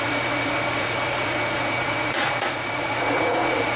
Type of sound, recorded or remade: remade